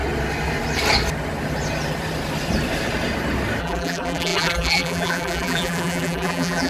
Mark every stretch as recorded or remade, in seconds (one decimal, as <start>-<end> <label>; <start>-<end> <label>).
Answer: 0.0-3.6 recorded; 3.6-6.7 remade